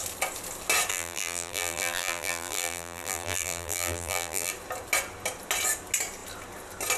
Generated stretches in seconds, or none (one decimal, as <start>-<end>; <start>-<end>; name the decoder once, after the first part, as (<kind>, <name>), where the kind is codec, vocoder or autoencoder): 0.9-4.5 (vocoder, BigVGAN v2)